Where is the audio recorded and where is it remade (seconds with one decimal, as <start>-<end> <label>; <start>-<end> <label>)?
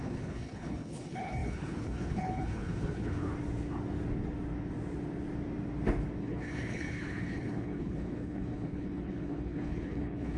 0.0-3.3 remade; 3.3-6.2 recorded; 6.2-10.4 remade